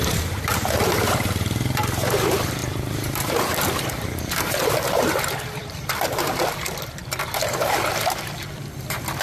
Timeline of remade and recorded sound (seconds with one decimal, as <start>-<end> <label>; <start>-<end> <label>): 0.0-2.6 remade; 2.6-3.3 recorded; 3.3-7.0 remade; 7.0-8.6 recorded; 8.6-9.2 remade